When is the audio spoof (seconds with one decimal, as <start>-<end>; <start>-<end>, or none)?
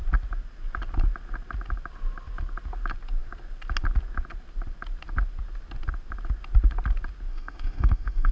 7.3-8.3